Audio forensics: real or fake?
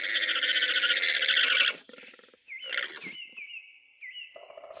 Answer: real